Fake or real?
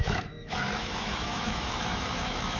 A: fake